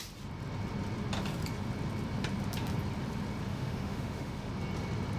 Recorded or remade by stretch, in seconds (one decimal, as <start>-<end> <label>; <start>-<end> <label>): 0.0-3.5 recorded; 3.5-4.5 remade; 4.5-5.2 recorded